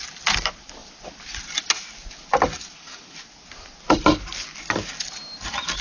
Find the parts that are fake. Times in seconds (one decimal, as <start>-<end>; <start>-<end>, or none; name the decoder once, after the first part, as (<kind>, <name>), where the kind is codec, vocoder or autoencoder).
none